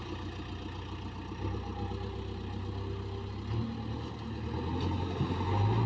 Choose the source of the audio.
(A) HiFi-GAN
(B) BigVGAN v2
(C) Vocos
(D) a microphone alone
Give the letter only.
D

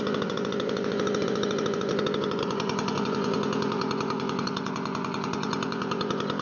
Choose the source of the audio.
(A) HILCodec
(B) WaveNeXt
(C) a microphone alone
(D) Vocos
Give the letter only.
D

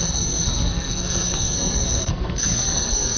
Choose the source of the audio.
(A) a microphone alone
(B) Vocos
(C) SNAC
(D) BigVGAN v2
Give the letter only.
C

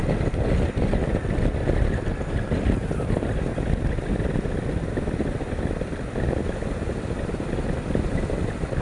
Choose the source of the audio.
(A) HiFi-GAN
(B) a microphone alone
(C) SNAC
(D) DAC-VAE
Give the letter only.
B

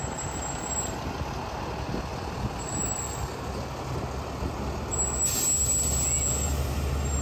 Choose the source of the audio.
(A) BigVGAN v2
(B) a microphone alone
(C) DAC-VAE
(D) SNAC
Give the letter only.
B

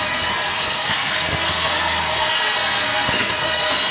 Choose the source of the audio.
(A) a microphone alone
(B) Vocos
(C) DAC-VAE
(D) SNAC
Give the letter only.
D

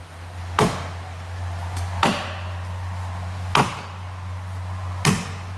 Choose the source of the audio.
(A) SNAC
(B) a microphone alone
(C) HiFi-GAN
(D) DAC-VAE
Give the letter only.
B